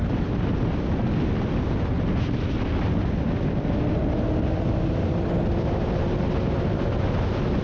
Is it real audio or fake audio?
real